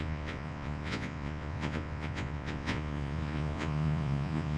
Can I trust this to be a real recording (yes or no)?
no